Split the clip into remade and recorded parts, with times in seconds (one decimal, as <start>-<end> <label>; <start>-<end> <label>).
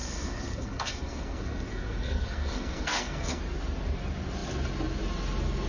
0.0-3.4 remade; 3.4-5.7 recorded